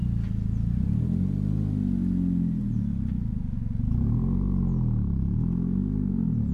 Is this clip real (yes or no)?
yes